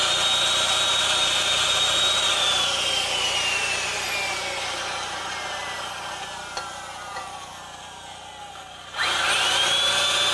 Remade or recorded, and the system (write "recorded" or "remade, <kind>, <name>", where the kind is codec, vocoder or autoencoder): recorded